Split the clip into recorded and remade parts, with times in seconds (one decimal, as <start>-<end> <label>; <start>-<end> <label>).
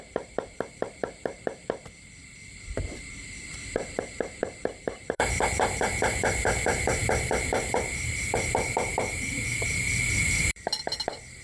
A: 0.0-11.4 remade